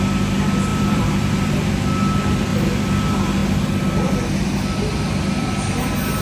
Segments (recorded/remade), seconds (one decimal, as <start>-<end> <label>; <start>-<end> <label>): 0.0-0.7 recorded; 0.7-1.7 remade; 1.7-2.5 recorded; 2.5-3.0 remade; 3.0-3.4 recorded; 3.4-5.5 remade; 5.5-6.2 recorded